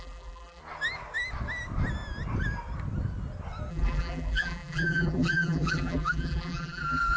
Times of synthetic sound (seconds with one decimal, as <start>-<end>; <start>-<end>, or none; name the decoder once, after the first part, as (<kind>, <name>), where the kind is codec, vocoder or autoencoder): 0.0-0.6 (vocoder, BigVGAN v2); 3.7-7.2